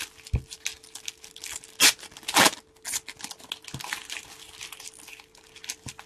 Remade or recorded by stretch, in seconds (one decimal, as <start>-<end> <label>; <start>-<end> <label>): 0.0-6.1 recorded

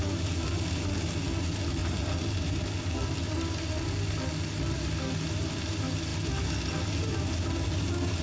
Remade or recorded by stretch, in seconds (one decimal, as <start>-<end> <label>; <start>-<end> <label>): 0.0-8.2 recorded

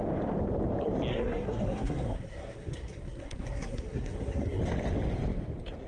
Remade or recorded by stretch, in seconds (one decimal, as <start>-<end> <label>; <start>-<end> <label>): 0.0-1.1 recorded; 1.1-4.6 remade; 4.6-5.9 recorded

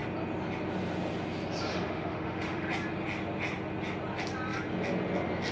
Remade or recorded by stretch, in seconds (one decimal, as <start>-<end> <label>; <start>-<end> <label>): 0.0-1.7 recorded; 1.7-2.7 remade; 2.7-5.5 recorded

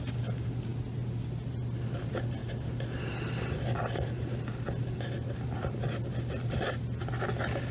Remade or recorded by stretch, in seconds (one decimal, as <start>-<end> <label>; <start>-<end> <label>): 0.0-2.4 recorded; 2.4-6.8 remade; 6.8-7.7 recorded